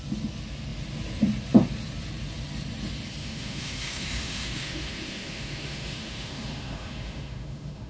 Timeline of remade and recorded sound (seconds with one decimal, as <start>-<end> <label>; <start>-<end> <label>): 0.0-3.2 recorded; 3.2-7.9 remade